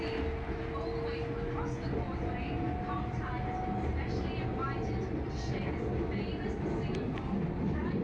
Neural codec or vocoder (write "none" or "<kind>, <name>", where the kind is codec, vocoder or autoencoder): none